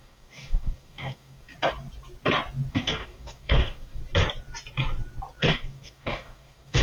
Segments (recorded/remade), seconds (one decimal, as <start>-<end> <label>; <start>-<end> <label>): 0.0-1.5 remade; 1.5-2.7 recorded; 2.7-4.0 remade; 4.0-5.4 recorded; 5.4-6.8 remade